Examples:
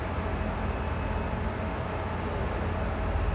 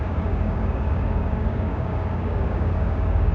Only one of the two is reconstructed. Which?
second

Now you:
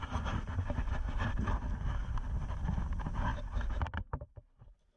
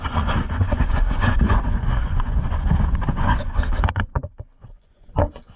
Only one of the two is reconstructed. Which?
second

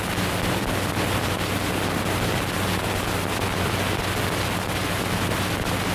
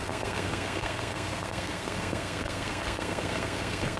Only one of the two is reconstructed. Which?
second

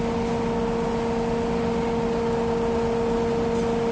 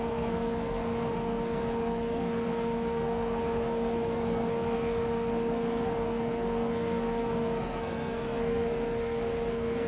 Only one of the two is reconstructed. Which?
second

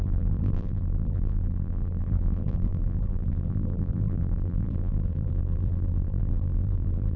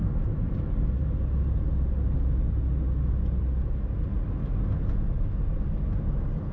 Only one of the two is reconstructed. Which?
first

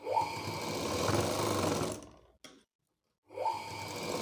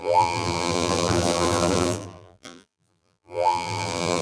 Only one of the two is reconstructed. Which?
second